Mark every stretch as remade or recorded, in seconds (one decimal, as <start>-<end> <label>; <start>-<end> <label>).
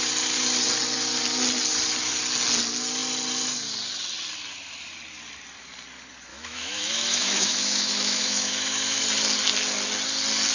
0.0-6.3 recorded; 6.3-9.0 remade; 9.0-10.5 recorded